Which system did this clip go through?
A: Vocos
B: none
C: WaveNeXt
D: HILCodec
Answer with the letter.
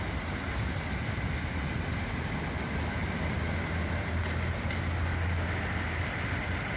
B